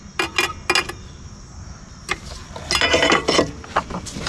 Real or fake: real